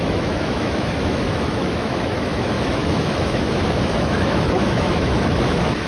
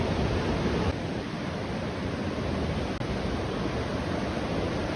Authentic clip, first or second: second